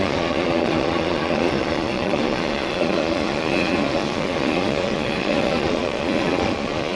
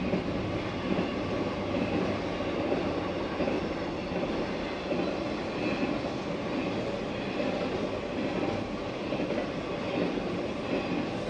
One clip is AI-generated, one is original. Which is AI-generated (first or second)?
first